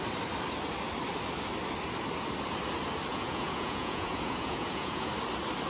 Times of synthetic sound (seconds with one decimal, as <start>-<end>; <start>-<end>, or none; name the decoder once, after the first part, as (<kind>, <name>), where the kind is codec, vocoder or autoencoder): 3.1-5.1 (vocoder, Vocos)